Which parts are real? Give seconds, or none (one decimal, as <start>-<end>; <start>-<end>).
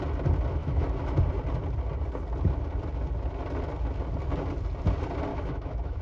0.0-0.6; 1.2-5.3